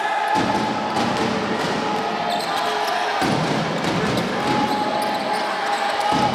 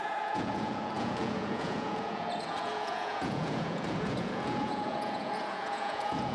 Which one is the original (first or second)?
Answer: first